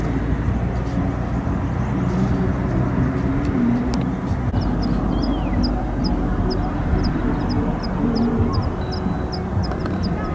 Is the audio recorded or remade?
recorded